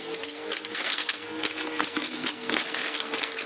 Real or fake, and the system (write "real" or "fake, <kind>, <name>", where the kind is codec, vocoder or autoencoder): fake, codec, SNAC